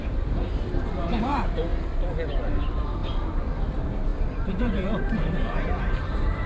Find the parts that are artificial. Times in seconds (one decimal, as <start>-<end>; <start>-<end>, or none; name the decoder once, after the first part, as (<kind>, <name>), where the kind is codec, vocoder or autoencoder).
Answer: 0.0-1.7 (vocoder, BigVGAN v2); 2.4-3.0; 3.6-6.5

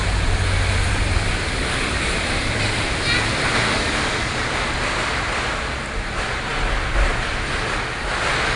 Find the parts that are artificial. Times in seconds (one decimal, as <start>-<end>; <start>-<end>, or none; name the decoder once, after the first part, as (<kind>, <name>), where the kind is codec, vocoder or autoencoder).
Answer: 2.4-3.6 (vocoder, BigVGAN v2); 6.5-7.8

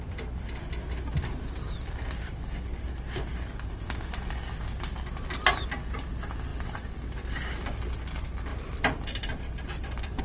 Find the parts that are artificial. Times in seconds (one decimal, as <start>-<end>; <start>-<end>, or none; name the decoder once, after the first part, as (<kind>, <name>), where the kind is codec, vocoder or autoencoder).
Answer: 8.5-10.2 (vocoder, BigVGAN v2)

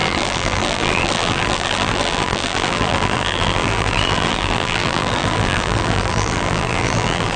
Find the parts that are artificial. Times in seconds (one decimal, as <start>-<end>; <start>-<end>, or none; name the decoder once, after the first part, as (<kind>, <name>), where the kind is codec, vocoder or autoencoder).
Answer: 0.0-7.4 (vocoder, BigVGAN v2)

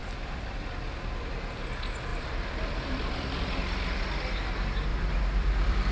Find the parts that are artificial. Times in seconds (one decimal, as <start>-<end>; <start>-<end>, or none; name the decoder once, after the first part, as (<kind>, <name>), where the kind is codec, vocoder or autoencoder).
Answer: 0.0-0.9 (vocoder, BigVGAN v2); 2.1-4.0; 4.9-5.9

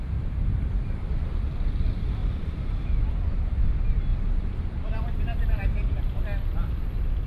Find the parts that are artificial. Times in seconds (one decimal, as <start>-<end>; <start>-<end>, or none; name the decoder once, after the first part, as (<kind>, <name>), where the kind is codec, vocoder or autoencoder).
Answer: 2.2-3.0 (vocoder, BigVGAN v2); 4.1-6.2

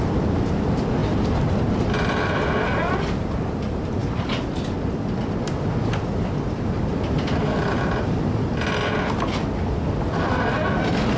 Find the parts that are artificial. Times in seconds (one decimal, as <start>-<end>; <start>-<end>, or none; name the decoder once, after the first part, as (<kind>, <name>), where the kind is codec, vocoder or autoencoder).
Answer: 1.0-1.6 (vocoder, BigVGAN v2)